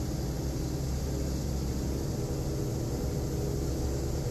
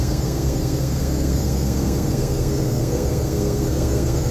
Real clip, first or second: first